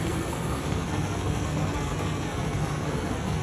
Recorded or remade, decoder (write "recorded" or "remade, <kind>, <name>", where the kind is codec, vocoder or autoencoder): remade, codec, SNAC